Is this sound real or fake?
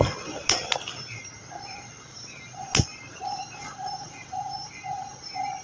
real